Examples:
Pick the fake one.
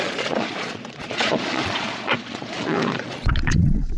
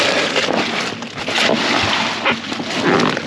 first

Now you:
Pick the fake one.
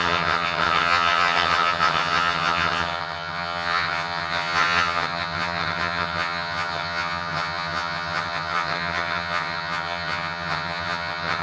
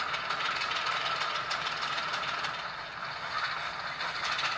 first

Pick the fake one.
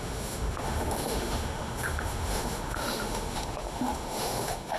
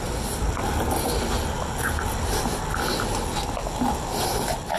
first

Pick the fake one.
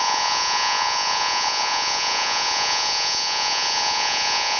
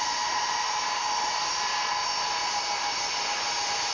first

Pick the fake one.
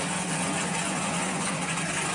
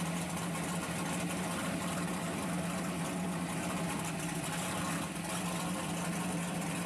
first